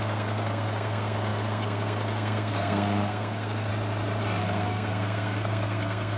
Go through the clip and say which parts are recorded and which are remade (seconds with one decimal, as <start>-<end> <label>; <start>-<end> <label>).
0.0-3.7 remade; 3.7-4.4 recorded; 4.4-6.2 remade